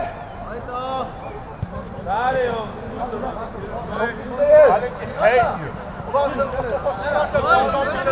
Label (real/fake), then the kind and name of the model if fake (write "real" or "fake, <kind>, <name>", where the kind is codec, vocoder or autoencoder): real